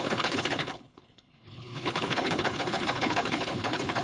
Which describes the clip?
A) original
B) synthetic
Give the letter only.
B